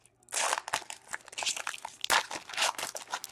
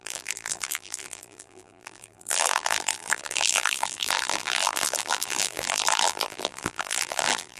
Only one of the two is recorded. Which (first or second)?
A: first